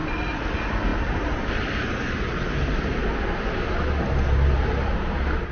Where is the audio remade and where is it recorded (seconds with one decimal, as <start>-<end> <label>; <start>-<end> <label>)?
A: 0.0-5.5 recorded